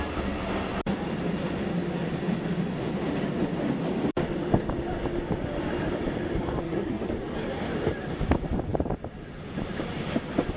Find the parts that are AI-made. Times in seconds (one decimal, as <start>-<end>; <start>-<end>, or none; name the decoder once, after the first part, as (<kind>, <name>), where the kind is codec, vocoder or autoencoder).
6.6-7.1 (codec, SNAC)